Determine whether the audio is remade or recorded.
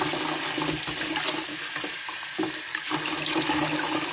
recorded